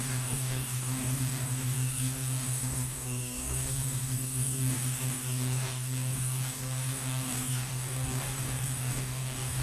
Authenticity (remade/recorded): remade